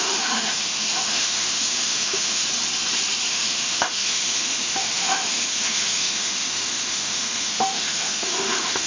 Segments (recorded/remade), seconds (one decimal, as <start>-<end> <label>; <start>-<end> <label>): 0.0-2.4 remade; 2.4-3.3 recorded; 3.3-8.9 remade